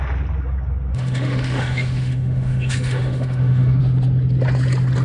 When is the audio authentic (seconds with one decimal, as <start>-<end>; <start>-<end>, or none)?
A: 0.0-0.9; 3.8-5.0